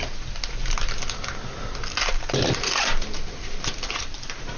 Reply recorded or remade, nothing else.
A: recorded